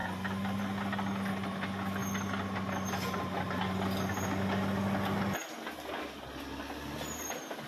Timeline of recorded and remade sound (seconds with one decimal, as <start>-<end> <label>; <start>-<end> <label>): 0.0-7.7 recorded